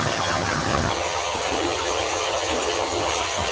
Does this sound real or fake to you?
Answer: fake